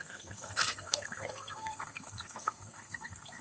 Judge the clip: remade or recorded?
remade